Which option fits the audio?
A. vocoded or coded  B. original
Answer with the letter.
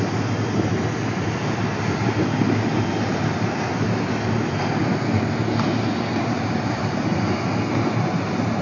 B